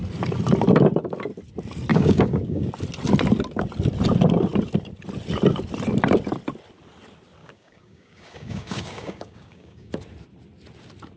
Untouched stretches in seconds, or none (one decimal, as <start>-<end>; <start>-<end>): 0.0-1.9; 2.7-7.4; 9.9-11.2

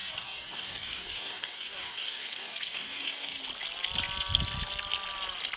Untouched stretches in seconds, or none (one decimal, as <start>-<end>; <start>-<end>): 3.4-5.6

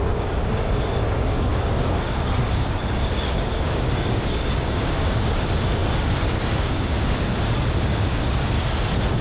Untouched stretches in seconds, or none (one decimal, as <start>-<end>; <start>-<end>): 8.4-9.2

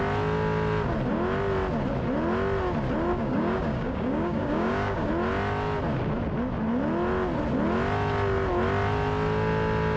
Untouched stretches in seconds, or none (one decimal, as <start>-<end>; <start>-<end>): 0.0-3.1; 5.1-10.0